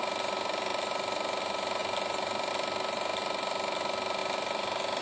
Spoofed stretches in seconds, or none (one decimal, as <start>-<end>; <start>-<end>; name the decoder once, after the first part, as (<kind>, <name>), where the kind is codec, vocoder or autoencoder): none